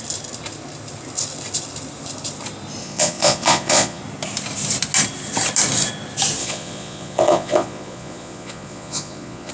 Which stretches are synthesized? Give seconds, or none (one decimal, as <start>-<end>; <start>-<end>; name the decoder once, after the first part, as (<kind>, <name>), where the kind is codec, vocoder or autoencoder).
2.8-4.0 (vocoder, Vocos); 6.4-9.5

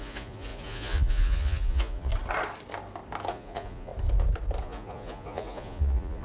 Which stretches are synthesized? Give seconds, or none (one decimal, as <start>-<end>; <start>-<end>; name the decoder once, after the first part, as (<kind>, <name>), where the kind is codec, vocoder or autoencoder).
0.0-2.1 (vocoder, Vocos); 3.3-3.9; 4.6-6.2